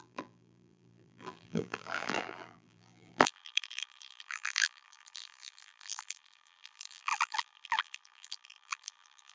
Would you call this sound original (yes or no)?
no